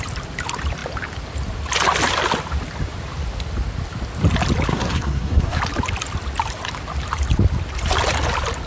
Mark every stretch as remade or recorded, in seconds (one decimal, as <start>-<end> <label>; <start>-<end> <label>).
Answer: 0.0-4.7 recorded; 4.7-5.6 remade; 5.6-8.7 recorded